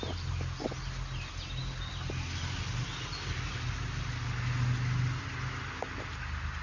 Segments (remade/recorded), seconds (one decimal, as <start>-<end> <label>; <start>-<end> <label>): 0.0-6.6 recorded